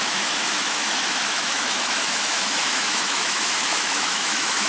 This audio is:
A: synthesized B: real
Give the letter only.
A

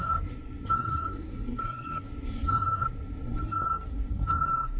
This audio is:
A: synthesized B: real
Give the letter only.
A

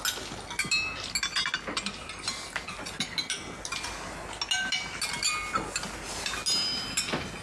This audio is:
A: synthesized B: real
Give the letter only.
B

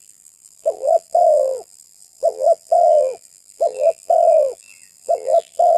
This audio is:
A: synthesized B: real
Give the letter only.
A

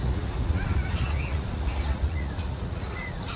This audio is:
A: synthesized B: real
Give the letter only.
A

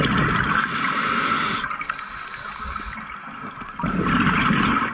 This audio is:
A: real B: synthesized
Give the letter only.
A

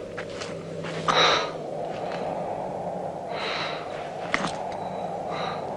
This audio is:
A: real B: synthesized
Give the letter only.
A